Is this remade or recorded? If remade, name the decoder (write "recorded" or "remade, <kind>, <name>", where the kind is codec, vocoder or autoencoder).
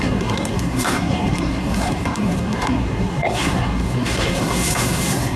remade, codec, SNAC